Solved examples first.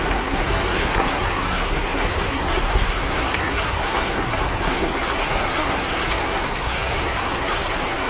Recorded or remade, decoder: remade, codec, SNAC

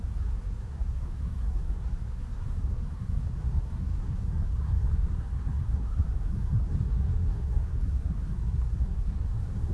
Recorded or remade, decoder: remade, codec, SNAC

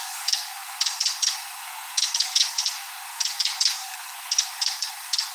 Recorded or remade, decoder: remade, codec, SNAC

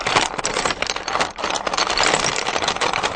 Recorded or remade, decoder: recorded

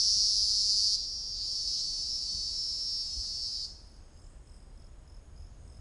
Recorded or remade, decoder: recorded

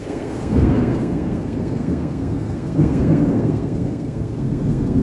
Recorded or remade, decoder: remade, codec, SNAC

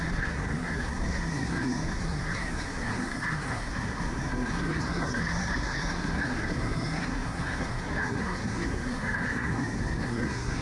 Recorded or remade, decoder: remade, codec, SNAC